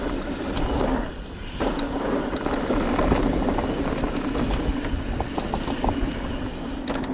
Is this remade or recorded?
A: recorded